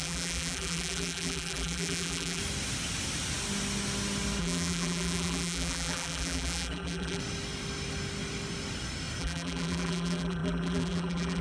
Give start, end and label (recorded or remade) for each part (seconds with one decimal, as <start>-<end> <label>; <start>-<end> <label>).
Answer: 0.0-2.4 remade; 2.4-4.4 recorded; 4.4-7.2 remade; 7.2-9.2 recorded; 9.2-11.4 remade